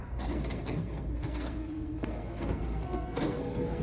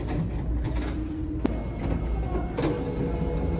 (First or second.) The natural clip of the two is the second